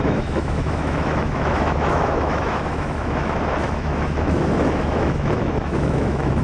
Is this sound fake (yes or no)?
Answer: yes